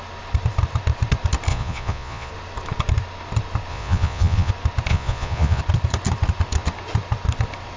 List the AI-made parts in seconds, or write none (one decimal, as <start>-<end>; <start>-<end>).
1.5-2.3; 3.7-4.5; 4.9-5.6